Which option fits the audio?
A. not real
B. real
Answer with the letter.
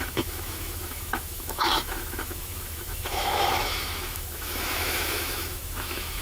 A